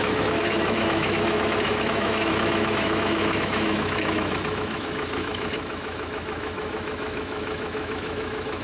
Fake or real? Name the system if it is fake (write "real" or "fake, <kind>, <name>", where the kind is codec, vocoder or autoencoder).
fake, autoencoder, DAC-VAE